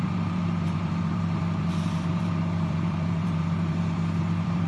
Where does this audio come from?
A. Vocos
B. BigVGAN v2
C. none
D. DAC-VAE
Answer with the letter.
B